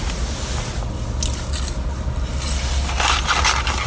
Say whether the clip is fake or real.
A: real